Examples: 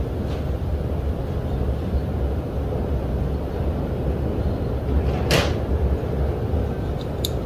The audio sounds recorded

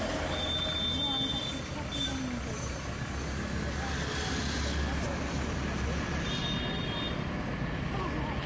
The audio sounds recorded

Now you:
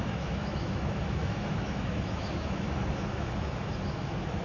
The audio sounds remade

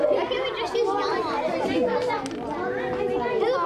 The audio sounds recorded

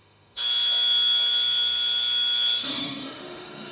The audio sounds remade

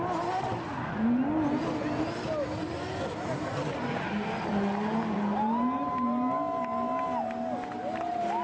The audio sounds recorded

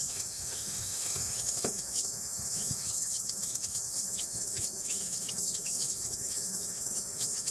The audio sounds remade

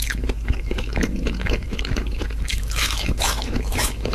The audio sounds remade